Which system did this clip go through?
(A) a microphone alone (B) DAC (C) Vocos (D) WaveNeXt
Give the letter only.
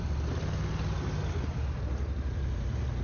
A